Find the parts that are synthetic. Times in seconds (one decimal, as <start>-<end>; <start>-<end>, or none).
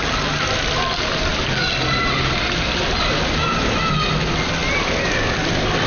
none